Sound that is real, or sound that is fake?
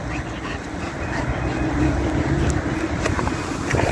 real